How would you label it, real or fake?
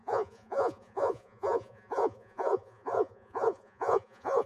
fake